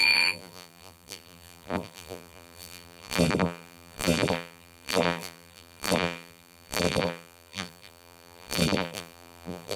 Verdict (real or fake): fake